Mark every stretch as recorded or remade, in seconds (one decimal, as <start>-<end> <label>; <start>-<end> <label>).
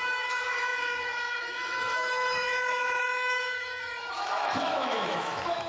0.0-5.7 remade